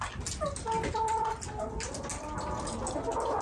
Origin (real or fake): real